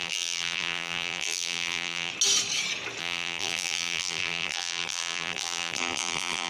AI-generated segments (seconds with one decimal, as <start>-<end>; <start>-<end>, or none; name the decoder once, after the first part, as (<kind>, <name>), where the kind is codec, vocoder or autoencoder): 0.0-2.1 (vocoder, BigVGAN v2); 3.0-6.5